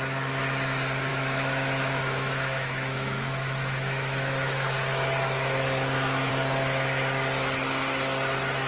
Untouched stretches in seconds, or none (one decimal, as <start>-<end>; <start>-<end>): 0.0-1.1; 6.3-8.7